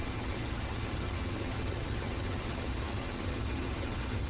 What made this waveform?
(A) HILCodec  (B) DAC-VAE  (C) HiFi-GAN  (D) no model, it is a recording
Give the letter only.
C